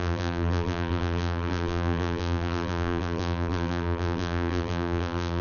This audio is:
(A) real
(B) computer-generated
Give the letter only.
B